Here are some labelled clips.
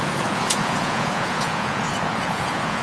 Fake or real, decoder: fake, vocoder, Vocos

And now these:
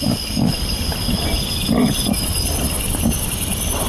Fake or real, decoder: real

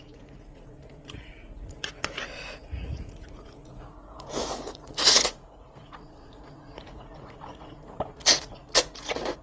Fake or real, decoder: fake, vocoder, Vocos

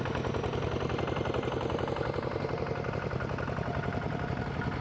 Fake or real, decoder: real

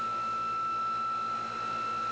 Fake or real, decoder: real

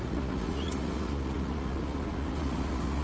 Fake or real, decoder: fake, vocoder, Vocos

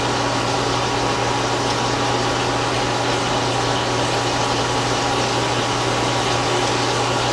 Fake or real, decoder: real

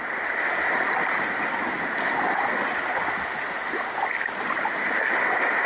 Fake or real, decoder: real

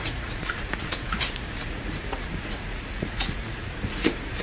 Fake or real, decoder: fake, vocoder, Vocos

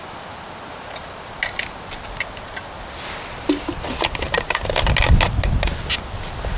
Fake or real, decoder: real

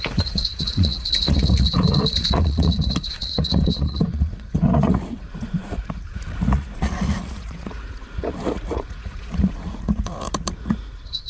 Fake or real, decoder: fake, vocoder, Vocos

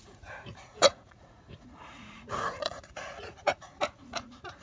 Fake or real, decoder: fake, vocoder, Vocos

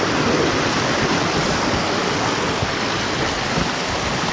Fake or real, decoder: real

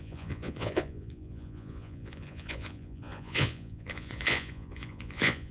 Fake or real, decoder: fake, vocoder, Vocos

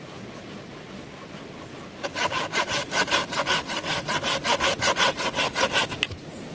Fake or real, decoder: real